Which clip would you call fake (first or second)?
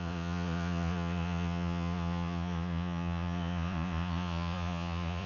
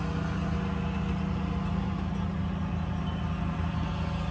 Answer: first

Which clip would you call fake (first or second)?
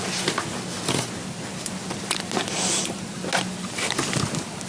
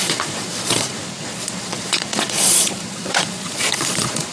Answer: second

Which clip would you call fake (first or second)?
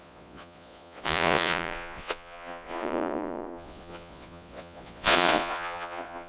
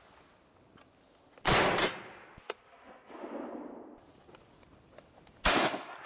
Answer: first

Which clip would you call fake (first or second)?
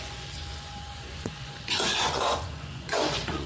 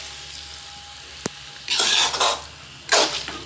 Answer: first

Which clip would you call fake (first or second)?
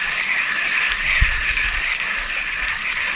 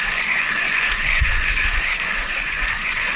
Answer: second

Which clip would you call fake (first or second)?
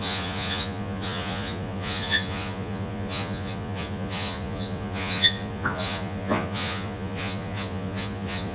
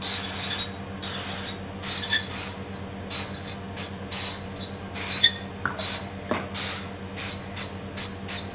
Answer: first